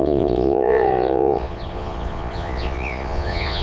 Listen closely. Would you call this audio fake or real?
fake